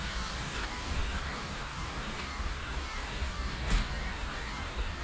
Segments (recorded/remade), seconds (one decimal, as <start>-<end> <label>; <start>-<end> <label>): 0.0-5.0 remade